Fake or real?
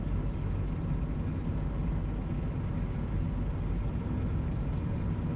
real